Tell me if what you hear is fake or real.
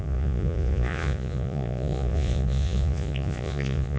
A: fake